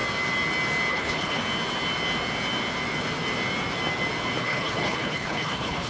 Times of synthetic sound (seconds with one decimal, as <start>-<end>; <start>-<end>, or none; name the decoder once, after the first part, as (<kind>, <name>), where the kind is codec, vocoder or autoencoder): 0.9-1.4 (codec, HILCodec); 4.4-5.9